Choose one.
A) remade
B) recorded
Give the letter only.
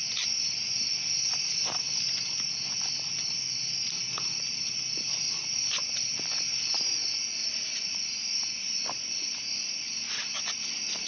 B